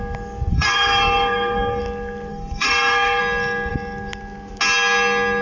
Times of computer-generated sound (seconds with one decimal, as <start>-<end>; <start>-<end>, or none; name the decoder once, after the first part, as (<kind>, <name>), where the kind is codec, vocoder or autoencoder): 0.5-1.8 (codec, SNAC); 2.3-3.2